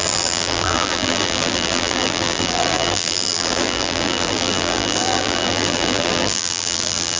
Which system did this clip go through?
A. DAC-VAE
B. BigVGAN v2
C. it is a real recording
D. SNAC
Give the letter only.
B